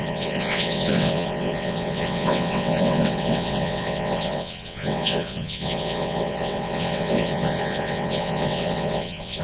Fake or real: fake